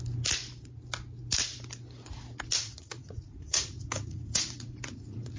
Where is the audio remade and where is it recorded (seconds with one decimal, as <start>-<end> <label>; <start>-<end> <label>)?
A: 0.0-2.6 recorded; 2.6-5.4 remade